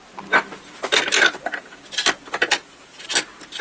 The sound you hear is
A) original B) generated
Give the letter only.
A